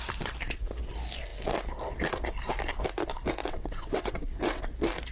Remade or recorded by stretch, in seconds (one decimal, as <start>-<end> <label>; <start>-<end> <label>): 0.0-3.4 recorded; 3.4-4.6 remade; 4.6-5.1 recorded